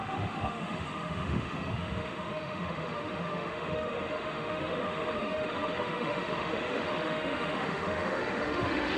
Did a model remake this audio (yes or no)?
yes